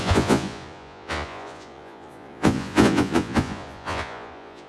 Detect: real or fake fake